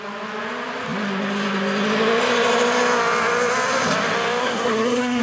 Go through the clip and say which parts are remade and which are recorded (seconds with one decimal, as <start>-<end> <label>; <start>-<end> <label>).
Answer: 0.0-4.4 recorded; 4.4-5.2 remade